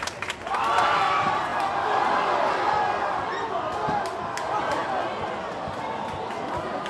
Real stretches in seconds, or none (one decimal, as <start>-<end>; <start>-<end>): 0.0-6.9